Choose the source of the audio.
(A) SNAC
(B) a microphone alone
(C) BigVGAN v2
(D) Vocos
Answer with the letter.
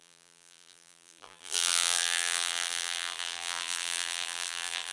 C